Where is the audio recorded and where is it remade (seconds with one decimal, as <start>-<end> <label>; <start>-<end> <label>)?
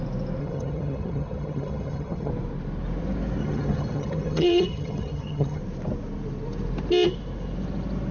0.0-0.4 recorded; 0.4-2.3 remade; 2.3-3.4 recorded; 3.4-5.6 remade; 5.6-8.1 recorded